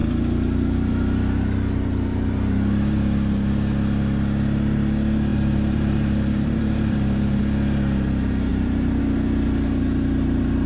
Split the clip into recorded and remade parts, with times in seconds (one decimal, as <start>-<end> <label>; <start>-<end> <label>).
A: 0.0-0.9 remade; 0.9-5.3 recorded; 5.3-7.4 remade; 7.4-8.5 recorded; 8.5-9.0 remade; 9.0-10.7 recorded